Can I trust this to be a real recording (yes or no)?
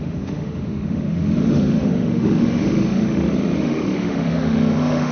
no